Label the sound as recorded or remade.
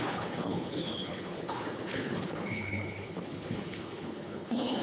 remade